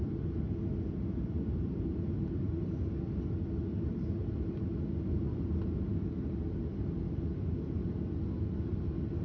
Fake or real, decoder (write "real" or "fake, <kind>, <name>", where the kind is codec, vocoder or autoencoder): real